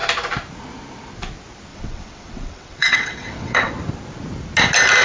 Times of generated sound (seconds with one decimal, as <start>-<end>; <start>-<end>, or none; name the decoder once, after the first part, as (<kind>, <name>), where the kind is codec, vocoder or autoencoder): 1.7-3.7 (vocoder, WaveNeXt)